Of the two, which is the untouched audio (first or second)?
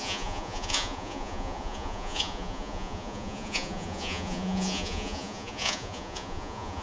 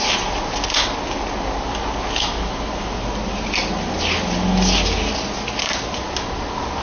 second